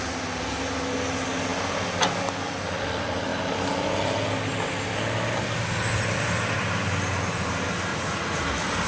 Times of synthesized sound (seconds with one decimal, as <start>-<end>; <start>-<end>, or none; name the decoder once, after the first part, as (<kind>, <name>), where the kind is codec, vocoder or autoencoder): 7.9-8.5 (vocoder, Vocos)